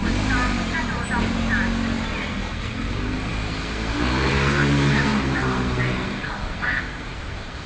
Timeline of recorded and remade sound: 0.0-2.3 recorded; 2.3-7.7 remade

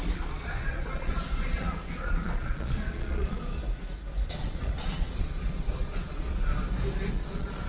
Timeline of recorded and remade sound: 0.0-3.6 remade; 3.6-4.3 recorded; 4.3-6.5 remade; 6.5-7.1 recorded; 7.1-7.7 remade